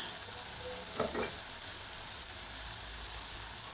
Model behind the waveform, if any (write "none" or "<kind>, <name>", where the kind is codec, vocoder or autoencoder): none